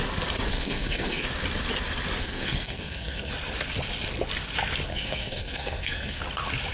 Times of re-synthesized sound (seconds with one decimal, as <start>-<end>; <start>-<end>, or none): 0.5-1.2; 2.2-3.3; 4.9-6.2

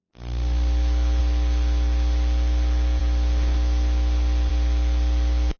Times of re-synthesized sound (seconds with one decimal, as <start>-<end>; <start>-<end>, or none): none